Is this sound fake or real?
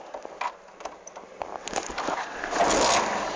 real